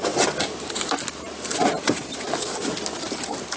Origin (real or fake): real